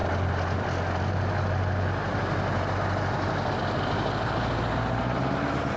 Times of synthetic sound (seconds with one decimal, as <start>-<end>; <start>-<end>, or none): none